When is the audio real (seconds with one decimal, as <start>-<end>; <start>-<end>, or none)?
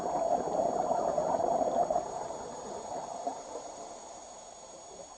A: 0.0-1.8